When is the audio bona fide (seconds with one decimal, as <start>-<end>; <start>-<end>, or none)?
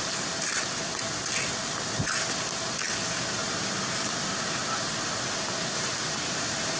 0.0-6.8